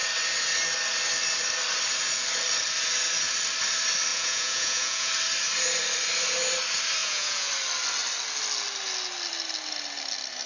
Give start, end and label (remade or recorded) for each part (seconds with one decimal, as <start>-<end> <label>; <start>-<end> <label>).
0.0-4.1 recorded; 4.1-5.1 remade; 5.1-7.0 recorded; 7.0-7.5 remade; 7.5-10.5 recorded